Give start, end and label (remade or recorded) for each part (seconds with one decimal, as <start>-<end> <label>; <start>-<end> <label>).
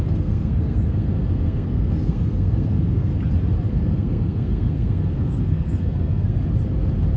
0.0-3.1 remade; 3.1-3.7 recorded; 3.7-6.4 remade; 6.4-7.2 recorded